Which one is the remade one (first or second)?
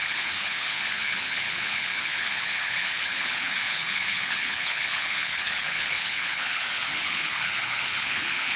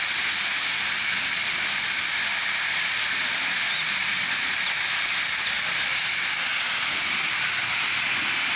first